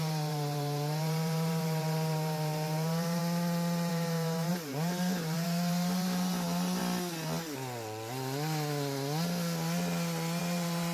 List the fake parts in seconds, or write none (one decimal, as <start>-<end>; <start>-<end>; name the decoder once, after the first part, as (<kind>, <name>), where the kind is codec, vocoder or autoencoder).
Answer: 0.0-3.2 (vocoder, BigVGAN v2); 3.9-6.8; 10.4-10.9